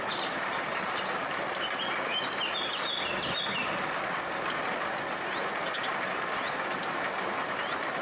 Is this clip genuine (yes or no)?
yes